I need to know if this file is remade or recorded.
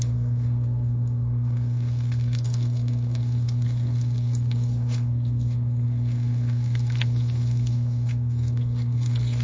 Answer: remade